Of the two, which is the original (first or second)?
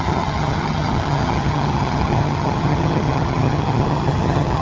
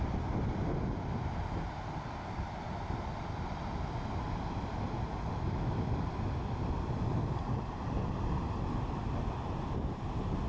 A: second